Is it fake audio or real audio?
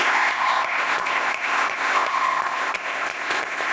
fake